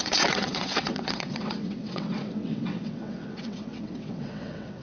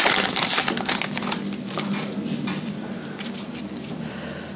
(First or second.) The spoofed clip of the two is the first